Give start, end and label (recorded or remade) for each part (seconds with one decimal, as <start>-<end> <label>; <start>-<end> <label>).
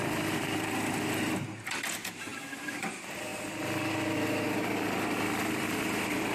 0.0-6.3 recorded